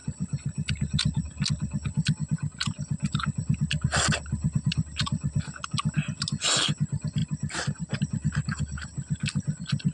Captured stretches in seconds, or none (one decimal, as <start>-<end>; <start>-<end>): 0.0-9.9